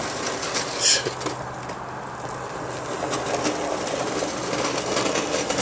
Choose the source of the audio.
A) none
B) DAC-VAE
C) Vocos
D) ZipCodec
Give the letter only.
A